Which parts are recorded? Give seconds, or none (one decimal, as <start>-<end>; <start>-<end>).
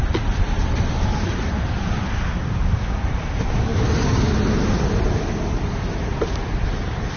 0.0-7.2